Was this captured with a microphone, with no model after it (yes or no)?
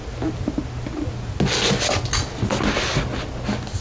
yes